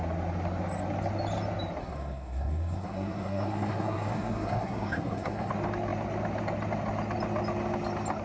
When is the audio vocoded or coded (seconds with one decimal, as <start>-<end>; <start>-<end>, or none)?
1.8-5.5